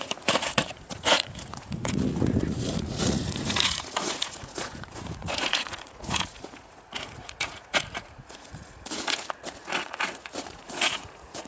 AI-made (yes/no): yes